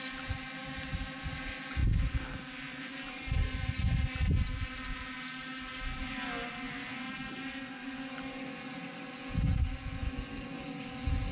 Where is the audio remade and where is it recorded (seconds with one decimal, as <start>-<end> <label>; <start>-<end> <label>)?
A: 0.0-11.3 recorded